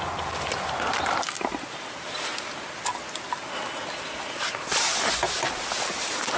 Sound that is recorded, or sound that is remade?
recorded